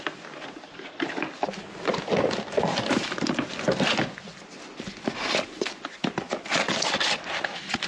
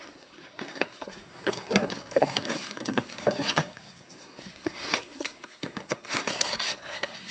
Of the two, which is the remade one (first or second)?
second